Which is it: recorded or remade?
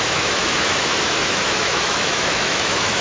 remade